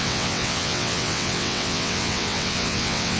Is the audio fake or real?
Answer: fake